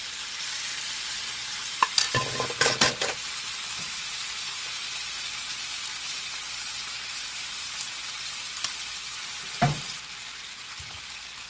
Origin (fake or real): fake